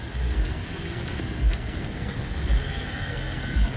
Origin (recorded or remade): remade